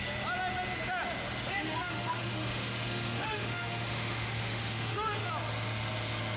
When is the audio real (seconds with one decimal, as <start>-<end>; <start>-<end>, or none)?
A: 0.0-1.5; 5.3-6.4